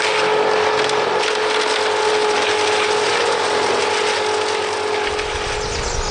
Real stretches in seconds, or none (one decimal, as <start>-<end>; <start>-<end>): 0.0-6.1